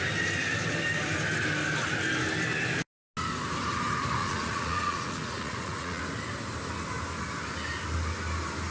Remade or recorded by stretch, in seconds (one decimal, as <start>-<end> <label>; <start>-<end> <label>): 0.0-4.2 recorded; 4.2-6.0 remade; 6.0-8.7 recorded